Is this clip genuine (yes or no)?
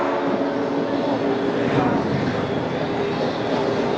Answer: yes